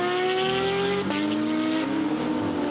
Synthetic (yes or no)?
no